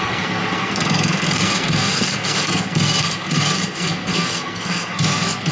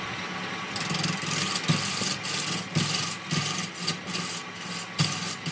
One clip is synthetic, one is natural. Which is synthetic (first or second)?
first